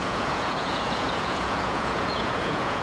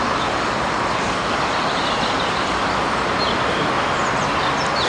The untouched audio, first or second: second